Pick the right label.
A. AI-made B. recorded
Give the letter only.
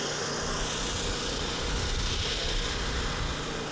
B